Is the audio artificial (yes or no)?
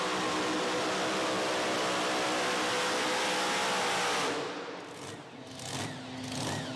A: no